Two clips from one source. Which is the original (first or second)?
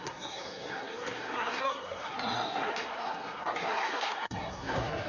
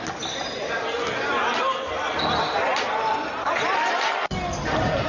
second